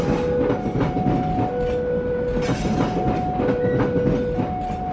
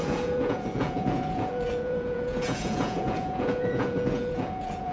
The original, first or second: first